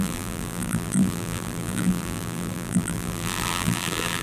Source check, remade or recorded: remade